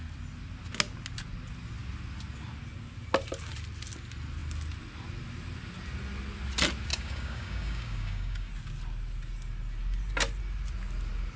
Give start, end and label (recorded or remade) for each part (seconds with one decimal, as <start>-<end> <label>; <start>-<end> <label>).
0.0-6.9 recorded; 6.9-8.5 remade; 8.5-11.4 recorded